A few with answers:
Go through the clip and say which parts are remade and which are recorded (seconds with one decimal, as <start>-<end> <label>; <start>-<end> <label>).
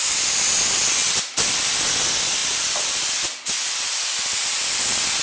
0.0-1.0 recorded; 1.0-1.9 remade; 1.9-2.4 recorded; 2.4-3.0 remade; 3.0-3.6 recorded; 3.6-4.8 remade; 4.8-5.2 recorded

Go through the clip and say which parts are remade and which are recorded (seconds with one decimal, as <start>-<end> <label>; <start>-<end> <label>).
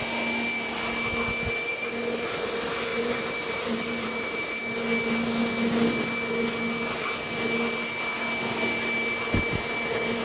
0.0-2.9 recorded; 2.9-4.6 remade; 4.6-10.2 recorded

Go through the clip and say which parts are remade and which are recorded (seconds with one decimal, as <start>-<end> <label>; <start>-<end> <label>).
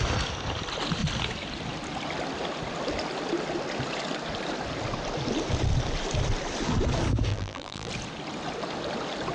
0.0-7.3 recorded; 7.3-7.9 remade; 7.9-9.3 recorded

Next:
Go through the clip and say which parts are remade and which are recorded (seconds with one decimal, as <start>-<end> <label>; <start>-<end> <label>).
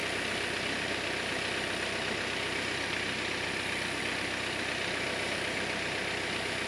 0.0-6.7 recorded